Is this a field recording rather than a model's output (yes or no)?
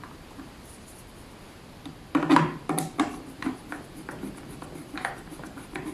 yes